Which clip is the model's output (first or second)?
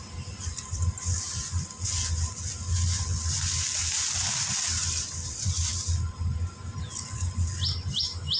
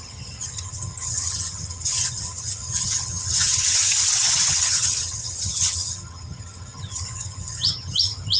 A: second